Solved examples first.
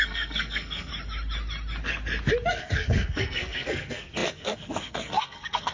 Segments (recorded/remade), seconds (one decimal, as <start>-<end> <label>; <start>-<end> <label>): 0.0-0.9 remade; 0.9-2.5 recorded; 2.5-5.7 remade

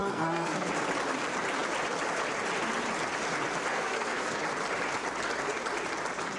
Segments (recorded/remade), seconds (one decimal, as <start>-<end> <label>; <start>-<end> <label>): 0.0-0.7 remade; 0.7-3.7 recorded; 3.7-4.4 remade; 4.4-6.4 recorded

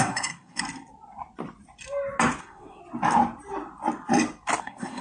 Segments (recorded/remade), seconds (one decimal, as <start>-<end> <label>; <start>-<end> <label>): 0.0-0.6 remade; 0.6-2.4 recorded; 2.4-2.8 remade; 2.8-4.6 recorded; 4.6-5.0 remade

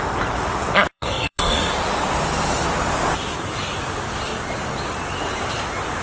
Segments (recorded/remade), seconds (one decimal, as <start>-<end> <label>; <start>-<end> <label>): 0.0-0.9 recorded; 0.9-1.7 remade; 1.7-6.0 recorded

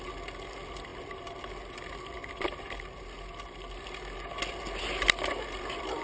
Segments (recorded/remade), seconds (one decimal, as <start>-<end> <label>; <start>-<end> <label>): 0.0-6.0 recorded

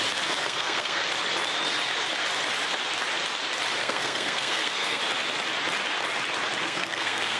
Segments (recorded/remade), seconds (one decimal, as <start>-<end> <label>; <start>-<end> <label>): 0.0-0.4 recorded; 0.4-1.0 remade; 1.0-3.8 recorded; 3.8-5.0 remade; 5.0-6.6 recorded; 6.6-7.4 remade

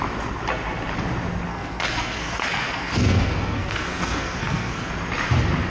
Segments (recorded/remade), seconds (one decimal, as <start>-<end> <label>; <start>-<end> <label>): 0.0-1.5 recorded; 1.5-4.9 remade; 4.9-5.7 recorded

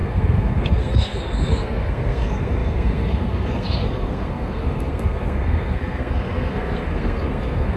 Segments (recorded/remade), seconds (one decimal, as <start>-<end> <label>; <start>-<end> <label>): 0.0-7.8 remade